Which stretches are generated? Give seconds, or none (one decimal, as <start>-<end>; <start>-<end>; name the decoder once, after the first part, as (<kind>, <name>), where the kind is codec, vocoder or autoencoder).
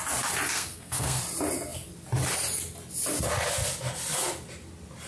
0.5-1.2 (codec, SNAC)